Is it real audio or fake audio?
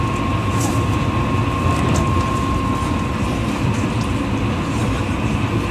real